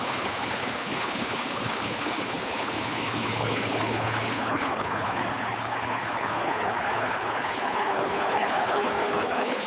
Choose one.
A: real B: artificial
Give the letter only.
B